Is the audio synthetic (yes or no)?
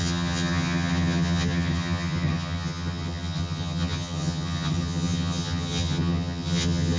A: yes